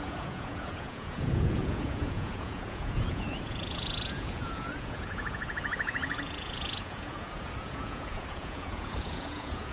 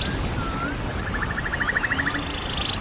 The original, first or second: second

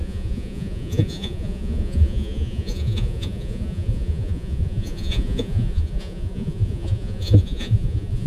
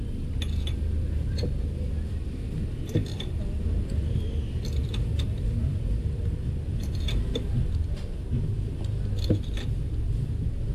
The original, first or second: second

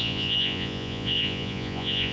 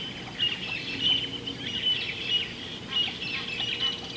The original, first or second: second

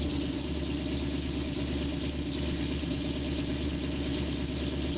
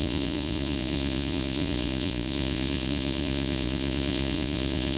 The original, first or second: first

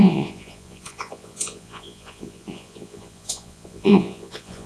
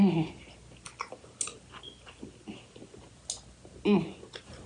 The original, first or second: second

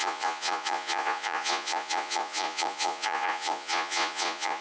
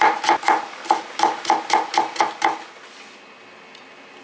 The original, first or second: second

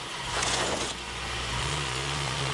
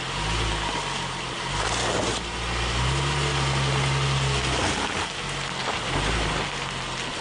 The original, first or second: second